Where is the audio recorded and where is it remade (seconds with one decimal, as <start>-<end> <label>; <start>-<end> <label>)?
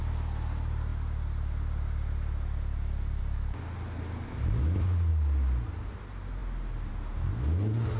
0.0-8.0 recorded